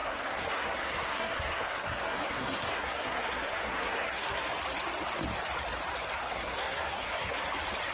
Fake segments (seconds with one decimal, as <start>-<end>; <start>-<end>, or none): 0.0-4.4; 6.2-7.4